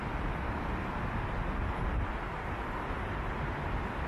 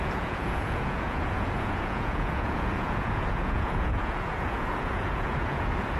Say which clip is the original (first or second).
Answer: first